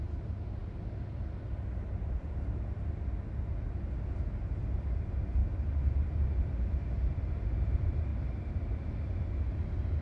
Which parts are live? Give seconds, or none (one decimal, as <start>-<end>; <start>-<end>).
0.0-5.4; 7.5-8.1; 8.8-10.0